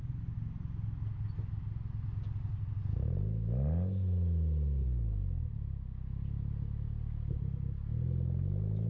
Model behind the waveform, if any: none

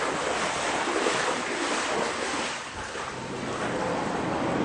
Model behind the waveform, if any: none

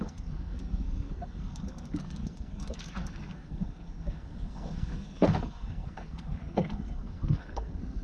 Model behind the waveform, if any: codec, SNAC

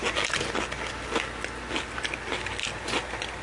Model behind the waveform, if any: none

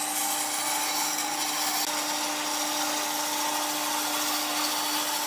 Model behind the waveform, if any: none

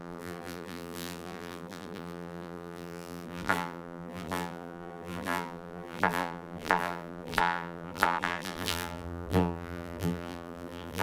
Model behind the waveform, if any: vocoder, BigVGAN v2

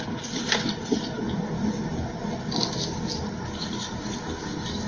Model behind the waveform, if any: none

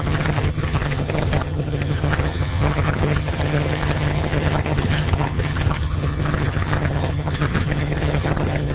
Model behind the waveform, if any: vocoder, HiFi-GAN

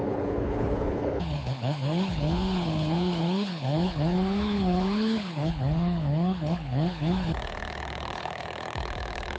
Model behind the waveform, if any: codec, HILCodec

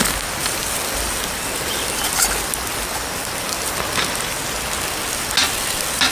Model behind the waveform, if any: none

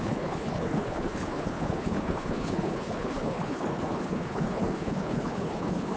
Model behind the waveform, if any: codec, HILCodec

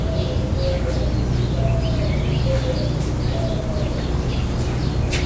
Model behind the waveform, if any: none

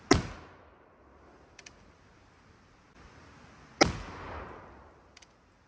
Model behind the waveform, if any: none